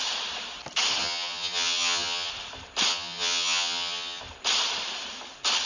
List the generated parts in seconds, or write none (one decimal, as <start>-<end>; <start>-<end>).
1.0-2.3; 2.9-4.2